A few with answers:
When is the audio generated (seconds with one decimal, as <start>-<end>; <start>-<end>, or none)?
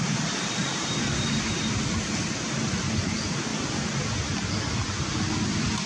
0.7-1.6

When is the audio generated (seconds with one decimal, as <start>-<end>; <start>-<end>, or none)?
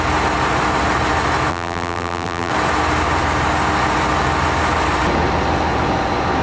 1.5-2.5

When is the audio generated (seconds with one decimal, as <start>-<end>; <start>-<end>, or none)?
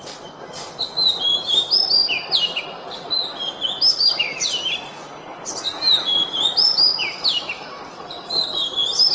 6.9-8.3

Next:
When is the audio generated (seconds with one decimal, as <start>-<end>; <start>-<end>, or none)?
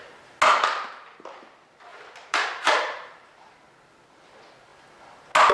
1.9-3.6